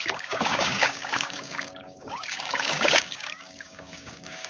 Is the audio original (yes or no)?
no